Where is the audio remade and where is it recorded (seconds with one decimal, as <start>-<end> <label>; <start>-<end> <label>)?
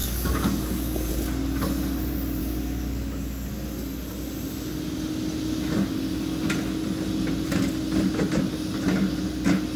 0.0-1.1 remade; 1.1-2.4 recorded; 2.4-3.5 remade; 3.5-9.8 recorded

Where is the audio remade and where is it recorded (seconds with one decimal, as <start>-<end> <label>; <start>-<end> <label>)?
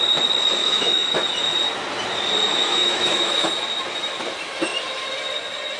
0.0-0.6 recorded; 0.6-1.3 remade; 1.3-2.5 recorded; 2.5-3.5 remade; 3.5-5.8 recorded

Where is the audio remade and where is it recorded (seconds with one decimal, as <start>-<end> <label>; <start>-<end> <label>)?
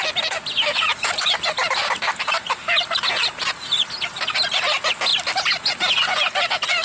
0.0-6.8 recorded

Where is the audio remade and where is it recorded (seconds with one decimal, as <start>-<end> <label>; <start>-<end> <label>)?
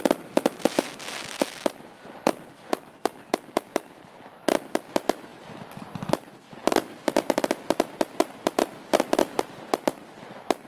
0.0-5.3 recorded; 5.3-6.0 remade; 6.0-10.7 recorded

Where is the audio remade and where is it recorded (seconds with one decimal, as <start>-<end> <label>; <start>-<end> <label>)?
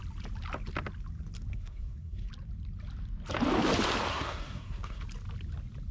0.0-1.5 recorded; 1.5-2.3 remade; 2.3-4.1 recorded; 4.1-5.0 remade; 5.0-5.9 recorded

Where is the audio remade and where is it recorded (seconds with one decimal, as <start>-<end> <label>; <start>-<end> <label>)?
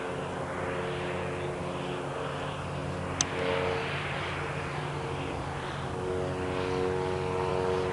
0.0-7.9 recorded